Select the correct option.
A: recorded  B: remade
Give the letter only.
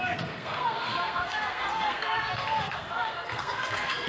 B